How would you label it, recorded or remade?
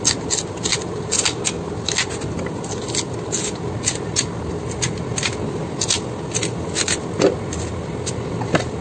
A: recorded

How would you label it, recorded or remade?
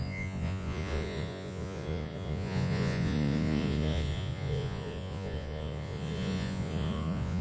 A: remade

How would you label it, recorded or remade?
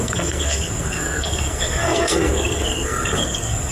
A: remade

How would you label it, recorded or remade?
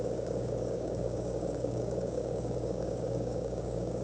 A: remade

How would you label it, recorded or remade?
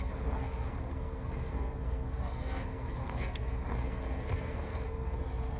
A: remade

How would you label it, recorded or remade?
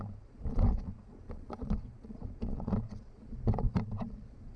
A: remade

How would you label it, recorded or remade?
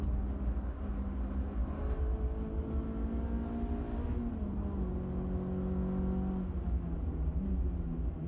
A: recorded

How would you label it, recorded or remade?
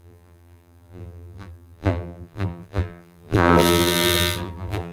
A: remade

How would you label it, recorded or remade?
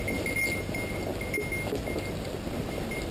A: recorded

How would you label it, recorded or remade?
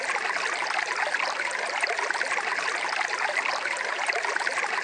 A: recorded